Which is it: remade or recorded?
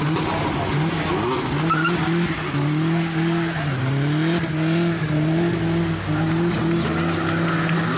recorded